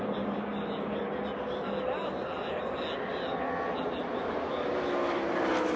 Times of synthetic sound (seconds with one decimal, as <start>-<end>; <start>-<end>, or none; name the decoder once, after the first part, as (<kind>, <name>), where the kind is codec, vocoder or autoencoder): none